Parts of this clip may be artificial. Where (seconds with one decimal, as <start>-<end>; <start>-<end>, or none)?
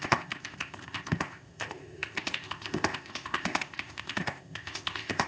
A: 0.0-5.3